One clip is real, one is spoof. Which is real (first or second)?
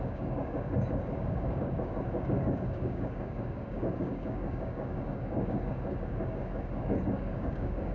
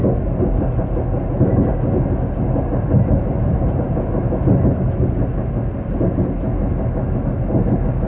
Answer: second